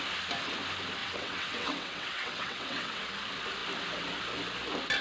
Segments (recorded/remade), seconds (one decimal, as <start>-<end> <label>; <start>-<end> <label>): 0.0-1.0 recorded; 1.0-3.0 remade; 3.0-5.0 recorded